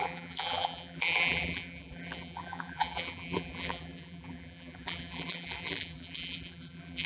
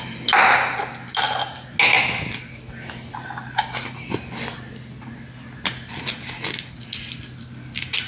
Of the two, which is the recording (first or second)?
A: second